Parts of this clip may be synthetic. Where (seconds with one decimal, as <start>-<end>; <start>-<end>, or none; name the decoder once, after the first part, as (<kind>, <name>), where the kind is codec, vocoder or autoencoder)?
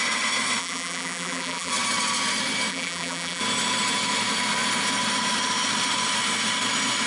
0.6-1.7 (vocoder, BigVGAN v2); 2.7-3.4